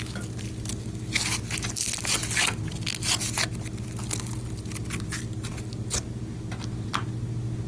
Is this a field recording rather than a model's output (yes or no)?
yes